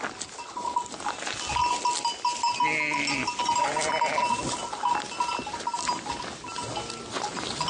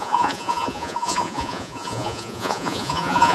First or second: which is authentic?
first